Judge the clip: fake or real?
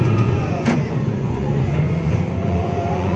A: fake